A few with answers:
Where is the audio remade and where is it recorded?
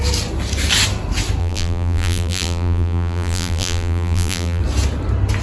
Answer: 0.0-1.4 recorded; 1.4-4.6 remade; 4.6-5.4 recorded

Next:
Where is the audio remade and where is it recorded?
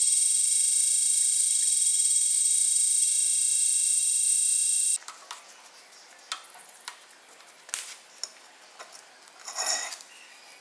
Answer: 0.0-10.6 recorded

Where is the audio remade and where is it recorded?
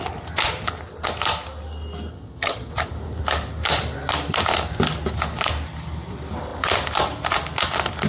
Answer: 0.0-2.1 recorded; 2.1-2.7 remade; 2.7-8.1 recorded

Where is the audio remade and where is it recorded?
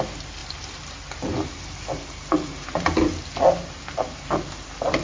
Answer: 0.0-5.0 recorded